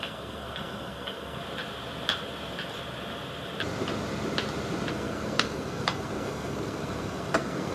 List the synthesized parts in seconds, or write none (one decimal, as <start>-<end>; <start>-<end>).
0.0-1.4; 4.9-7.7